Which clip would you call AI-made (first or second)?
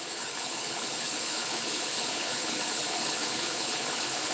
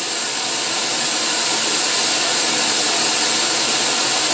first